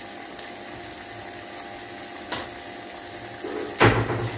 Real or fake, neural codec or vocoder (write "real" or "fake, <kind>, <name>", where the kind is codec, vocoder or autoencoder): real